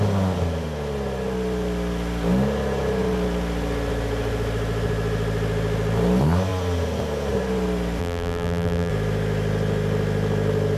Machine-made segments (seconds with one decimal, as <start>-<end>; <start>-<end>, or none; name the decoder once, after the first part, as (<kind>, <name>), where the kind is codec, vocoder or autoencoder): 8.0-8.9 (vocoder, BigVGAN v2)